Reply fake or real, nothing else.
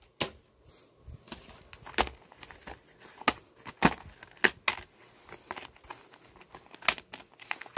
real